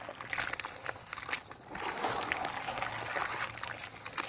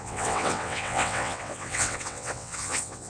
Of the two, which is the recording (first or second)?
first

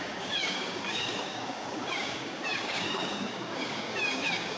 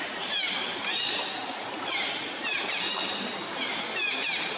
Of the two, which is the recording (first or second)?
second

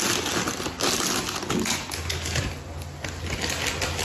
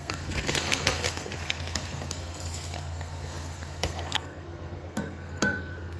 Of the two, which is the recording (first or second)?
first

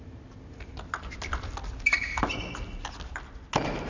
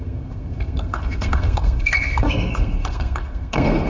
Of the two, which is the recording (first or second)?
first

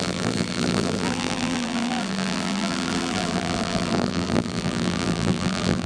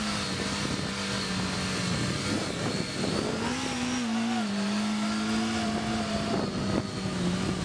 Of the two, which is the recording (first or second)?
second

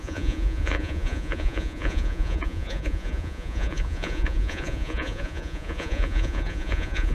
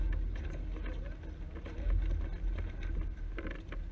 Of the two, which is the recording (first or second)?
second